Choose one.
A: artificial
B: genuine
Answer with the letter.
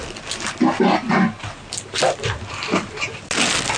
B